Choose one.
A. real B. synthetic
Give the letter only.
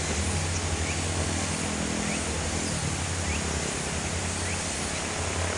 A